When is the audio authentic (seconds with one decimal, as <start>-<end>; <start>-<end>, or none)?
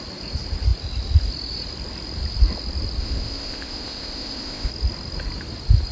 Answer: 0.0-3.0; 4.7-5.9